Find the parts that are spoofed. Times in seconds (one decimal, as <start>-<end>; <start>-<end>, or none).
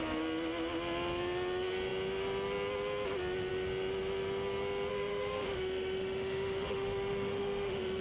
4.9-8.0